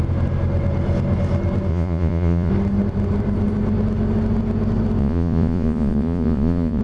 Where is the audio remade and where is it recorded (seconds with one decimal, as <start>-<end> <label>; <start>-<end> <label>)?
0.0-1.7 recorded; 1.7-2.5 remade; 2.5-5.0 recorded; 5.0-6.8 remade